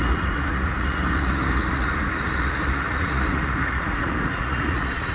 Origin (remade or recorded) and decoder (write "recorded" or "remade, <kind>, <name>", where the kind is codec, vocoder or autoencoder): remade, vocoder, Vocos